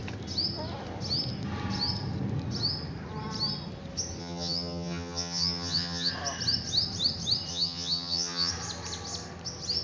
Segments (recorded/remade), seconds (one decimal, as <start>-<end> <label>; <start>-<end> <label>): 0.0-4.2 recorded; 4.2-6.1 remade; 6.1-7.5 recorded; 7.5-8.5 remade; 8.5-9.8 recorded